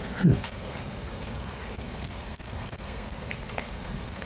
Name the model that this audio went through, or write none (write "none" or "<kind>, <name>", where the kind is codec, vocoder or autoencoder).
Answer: codec, SNAC